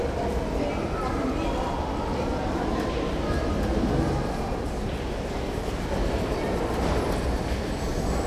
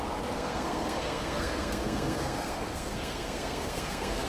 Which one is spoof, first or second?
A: second